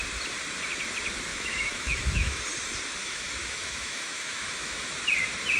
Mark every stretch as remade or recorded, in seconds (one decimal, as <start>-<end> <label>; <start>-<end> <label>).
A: 0.0-1.3 recorded; 1.3-2.4 remade; 2.4-3.0 recorded; 3.0-4.9 remade; 4.9-5.6 recorded